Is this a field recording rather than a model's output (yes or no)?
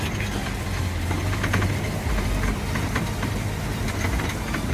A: yes